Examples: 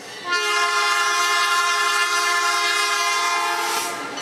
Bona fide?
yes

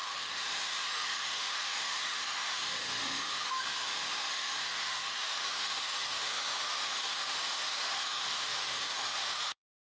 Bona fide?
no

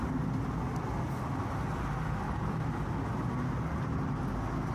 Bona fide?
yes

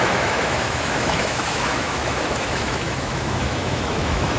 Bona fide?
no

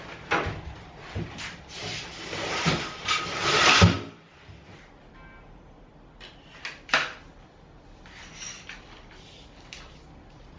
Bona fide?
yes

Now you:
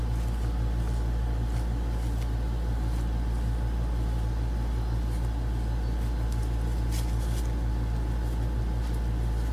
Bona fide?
yes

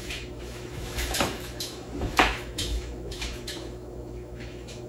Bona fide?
no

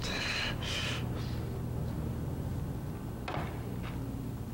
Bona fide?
yes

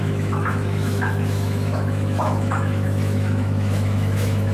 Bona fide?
no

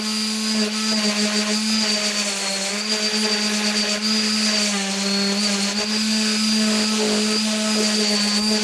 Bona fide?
yes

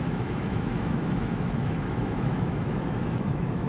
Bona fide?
no